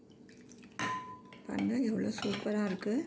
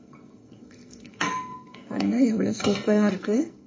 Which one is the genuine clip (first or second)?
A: first